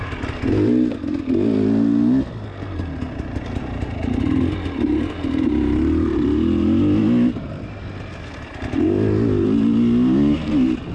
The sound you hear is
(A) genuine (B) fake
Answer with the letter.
A